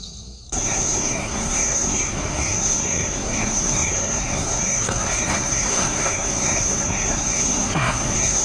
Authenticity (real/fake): fake